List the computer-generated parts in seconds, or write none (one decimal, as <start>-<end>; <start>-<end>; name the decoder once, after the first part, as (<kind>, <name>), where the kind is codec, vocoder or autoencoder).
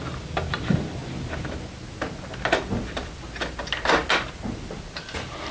none